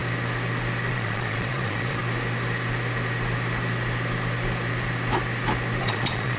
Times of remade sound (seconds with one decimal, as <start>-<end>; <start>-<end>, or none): 0.9-2.0; 5.8-6.4